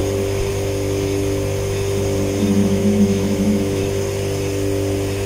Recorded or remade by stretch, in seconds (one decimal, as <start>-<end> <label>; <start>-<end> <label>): 0.0-2.6 recorded; 2.6-3.8 remade; 3.8-5.3 recorded